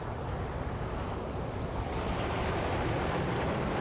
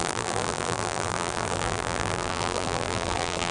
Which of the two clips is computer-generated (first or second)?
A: second